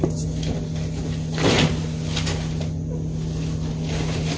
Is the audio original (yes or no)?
yes